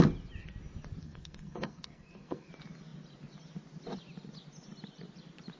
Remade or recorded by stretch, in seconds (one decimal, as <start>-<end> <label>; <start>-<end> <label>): 0.0-1.0 recorded; 1.0-2.5 remade; 2.5-5.6 recorded